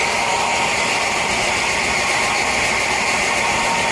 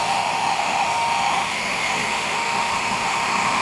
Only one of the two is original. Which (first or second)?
first